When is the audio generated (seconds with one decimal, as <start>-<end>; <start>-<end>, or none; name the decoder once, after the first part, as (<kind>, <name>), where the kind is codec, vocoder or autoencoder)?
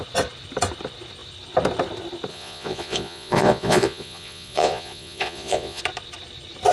2.3-5.8 (vocoder, Vocos)